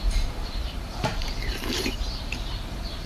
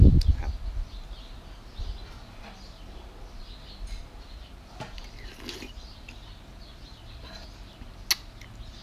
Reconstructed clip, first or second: first